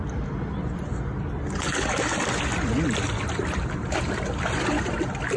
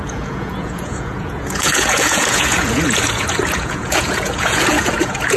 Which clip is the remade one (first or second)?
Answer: second